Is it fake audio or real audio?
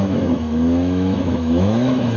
fake